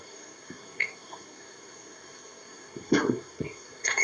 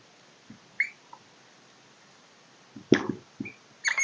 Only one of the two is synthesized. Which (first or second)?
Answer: first